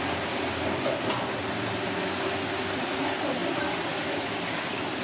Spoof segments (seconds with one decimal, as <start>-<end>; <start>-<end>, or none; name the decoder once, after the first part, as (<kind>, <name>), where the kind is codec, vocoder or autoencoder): none